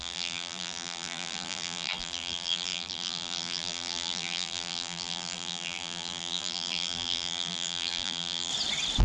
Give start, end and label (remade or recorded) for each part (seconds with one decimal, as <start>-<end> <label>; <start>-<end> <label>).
0.0-8.5 remade; 8.5-9.0 recorded